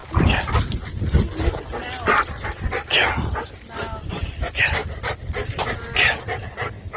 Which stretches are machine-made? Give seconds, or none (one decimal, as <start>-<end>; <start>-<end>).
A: none